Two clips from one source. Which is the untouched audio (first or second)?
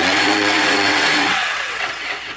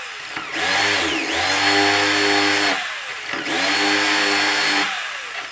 second